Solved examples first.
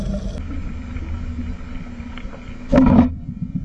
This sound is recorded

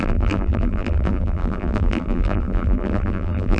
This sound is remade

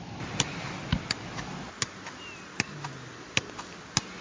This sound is recorded